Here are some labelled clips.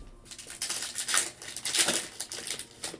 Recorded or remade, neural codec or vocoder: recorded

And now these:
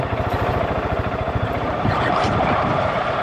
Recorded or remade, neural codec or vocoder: remade, vocoder, BigVGAN v2